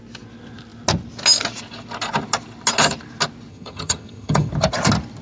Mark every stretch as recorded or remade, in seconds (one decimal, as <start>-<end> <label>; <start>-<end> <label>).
0.0-3.5 recorded; 3.5-4.5 remade; 4.5-5.2 recorded